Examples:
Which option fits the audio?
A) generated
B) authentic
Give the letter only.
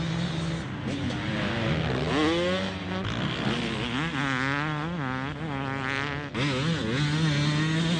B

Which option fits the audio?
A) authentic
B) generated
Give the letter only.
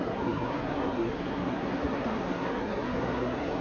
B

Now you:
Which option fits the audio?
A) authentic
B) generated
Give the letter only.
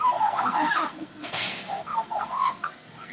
B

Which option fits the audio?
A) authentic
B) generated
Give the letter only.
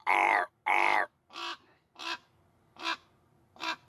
A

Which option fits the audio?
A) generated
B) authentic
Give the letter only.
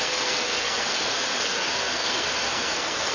A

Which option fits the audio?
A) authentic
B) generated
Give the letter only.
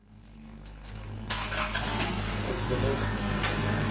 B